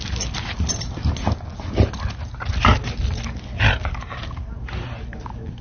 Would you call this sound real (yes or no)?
yes